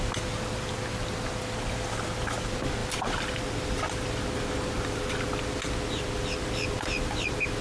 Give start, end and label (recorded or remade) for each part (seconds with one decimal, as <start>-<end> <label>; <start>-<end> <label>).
0.0-7.6 recorded